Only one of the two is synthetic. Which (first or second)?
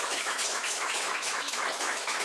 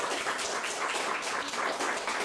first